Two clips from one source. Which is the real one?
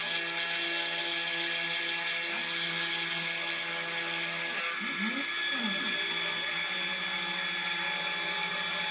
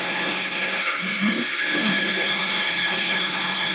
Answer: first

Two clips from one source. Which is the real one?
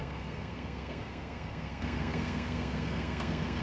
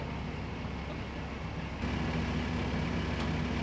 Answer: second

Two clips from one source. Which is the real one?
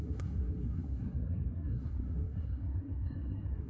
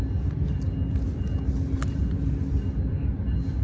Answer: second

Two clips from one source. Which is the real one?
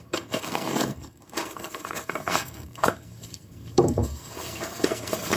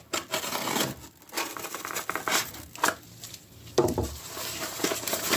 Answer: second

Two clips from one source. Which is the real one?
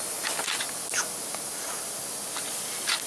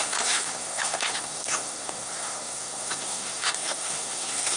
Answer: first